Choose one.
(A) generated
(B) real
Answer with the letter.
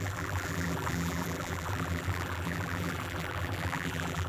A